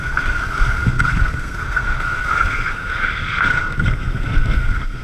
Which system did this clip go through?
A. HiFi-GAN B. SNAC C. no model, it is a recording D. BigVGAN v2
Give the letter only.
B